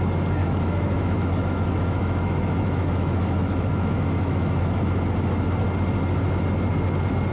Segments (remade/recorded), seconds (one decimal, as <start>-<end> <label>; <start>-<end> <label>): 0.0-0.4 recorded; 0.4-4.6 remade; 4.6-7.3 recorded

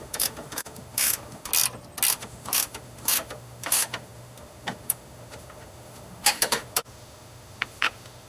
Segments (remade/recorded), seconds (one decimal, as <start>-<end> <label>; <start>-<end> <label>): 0.0-1.5 remade; 1.5-2.1 recorded; 2.1-8.3 remade

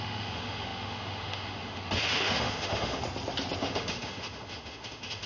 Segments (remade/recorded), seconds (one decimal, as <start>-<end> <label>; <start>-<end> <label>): 0.0-3.0 remade; 3.0-3.6 recorded; 3.6-5.3 remade